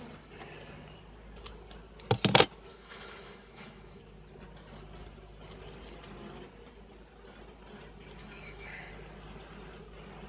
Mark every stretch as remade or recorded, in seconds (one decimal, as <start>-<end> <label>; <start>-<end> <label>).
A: 0.0-2.7 recorded; 2.7-4.0 remade; 4.0-8.2 recorded; 8.2-8.9 remade; 8.9-10.3 recorded